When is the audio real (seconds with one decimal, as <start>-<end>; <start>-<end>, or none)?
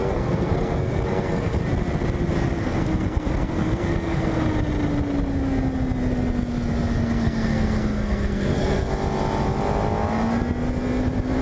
1.6-2.6; 4.4-7.0; 8.9-11.4